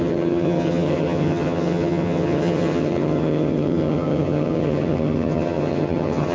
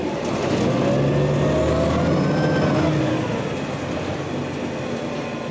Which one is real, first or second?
second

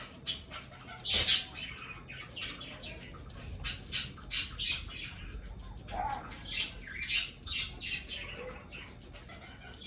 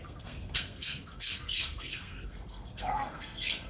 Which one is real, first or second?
first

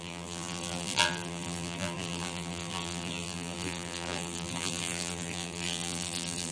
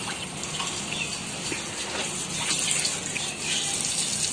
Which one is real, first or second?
second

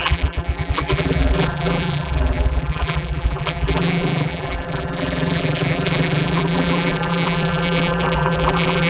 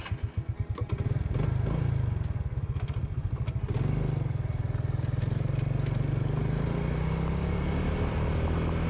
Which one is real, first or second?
second